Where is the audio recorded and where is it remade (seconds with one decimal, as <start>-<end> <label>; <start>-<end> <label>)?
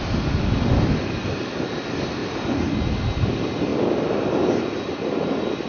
0.0-5.7 recorded